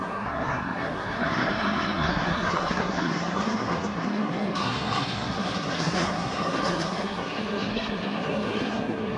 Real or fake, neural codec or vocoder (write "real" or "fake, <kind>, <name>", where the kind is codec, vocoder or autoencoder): fake, codec, SNAC